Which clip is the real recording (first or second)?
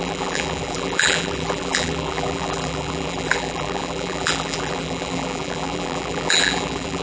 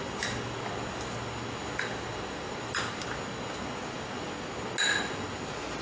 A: second